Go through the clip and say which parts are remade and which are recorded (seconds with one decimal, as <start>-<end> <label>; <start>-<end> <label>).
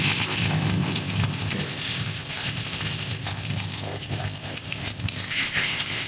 0.0-6.1 remade